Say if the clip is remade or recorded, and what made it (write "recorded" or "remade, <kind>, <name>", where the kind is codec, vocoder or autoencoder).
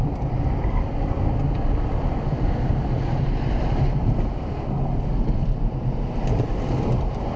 remade, vocoder, BigVGAN v2